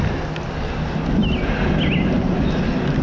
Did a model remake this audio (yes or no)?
no